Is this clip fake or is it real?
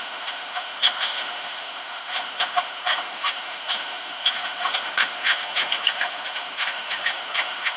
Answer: fake